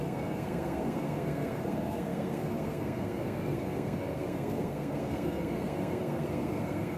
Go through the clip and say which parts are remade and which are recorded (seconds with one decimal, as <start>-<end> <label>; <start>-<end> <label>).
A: 0.0-7.0 remade